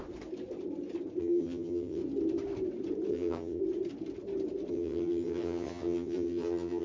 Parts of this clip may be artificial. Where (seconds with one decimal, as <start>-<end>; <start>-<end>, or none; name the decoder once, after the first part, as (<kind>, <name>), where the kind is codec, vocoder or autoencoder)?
1.2-2.0 (vocoder, HiFi-GAN); 3.1-3.6; 4.7-6.8